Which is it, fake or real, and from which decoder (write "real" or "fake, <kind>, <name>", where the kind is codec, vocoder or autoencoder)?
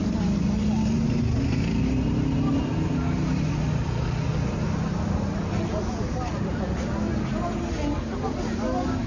real